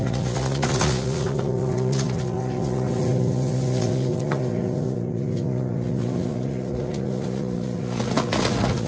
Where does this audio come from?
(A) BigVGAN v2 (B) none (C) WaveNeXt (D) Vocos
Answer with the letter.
D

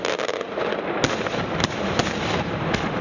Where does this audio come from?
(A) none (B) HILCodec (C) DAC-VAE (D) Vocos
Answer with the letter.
A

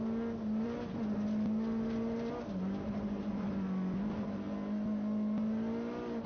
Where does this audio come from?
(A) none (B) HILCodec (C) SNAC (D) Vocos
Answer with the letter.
A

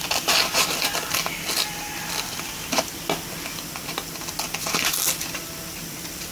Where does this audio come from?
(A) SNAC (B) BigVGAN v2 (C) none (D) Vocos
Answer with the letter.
C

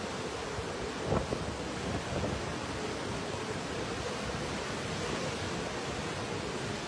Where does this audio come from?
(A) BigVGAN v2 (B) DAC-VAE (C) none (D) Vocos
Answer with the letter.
C